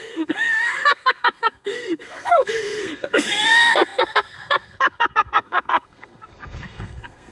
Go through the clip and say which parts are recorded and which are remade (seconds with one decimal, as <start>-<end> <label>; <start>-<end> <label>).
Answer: 0.0-7.3 remade